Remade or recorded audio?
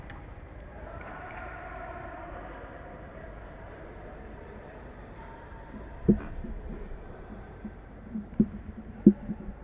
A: remade